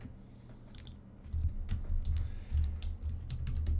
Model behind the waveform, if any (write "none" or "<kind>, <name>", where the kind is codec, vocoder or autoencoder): none